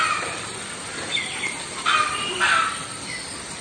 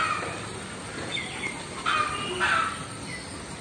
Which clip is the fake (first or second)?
first